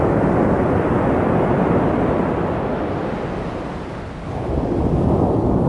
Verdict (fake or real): real